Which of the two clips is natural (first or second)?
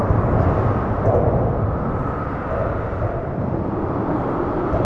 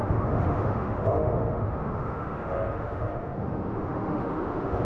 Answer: first